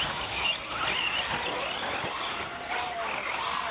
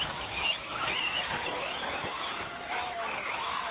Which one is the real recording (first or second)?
first